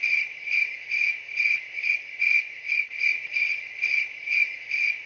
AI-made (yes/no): yes